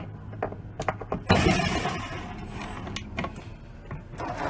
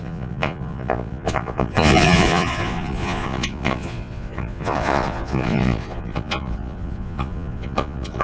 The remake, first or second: second